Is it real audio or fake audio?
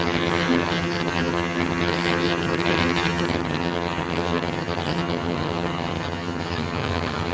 fake